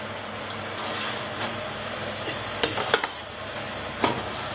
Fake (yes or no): no